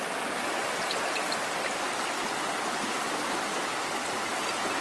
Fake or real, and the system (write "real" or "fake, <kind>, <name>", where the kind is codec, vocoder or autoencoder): real